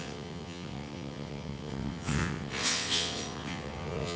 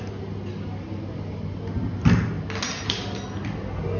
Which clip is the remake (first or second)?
first